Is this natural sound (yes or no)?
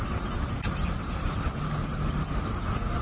yes